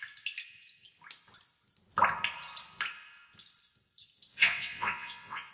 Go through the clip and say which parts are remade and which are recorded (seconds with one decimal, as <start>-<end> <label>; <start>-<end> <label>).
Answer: 0.0-4.3 recorded; 4.3-5.5 remade